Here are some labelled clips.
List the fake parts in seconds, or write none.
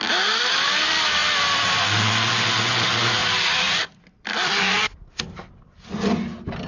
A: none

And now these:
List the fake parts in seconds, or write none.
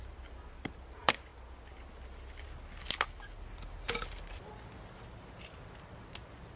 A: none